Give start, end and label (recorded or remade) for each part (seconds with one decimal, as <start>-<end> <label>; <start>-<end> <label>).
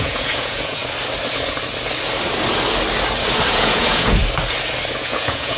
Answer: 0.0-0.8 remade; 0.8-3.5 recorded; 3.5-4.2 remade; 4.2-5.0 recorded; 5.0-5.6 remade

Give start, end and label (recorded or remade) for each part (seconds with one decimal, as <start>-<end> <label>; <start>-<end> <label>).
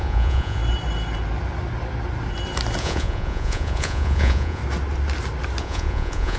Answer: 0.0-0.6 remade; 0.6-2.8 recorded; 2.8-4.6 remade; 4.6-5.6 recorded; 5.6-6.4 remade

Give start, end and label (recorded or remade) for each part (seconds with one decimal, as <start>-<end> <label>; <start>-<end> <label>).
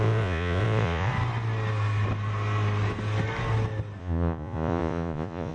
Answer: 0.0-1.1 remade; 1.1-4.0 recorded; 4.0-5.5 remade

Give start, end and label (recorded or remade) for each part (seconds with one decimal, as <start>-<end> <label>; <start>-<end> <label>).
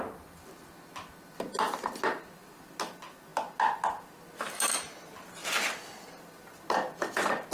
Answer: 0.0-7.5 recorded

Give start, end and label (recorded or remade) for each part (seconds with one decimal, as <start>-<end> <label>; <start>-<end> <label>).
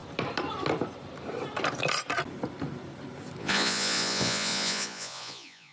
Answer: 0.0-3.4 recorded; 3.4-5.7 remade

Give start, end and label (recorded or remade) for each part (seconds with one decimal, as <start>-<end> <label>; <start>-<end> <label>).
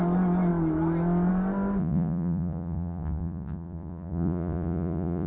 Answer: 0.0-1.8 recorded; 1.8-5.3 remade